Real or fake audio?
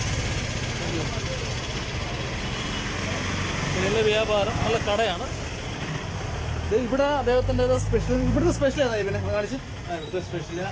real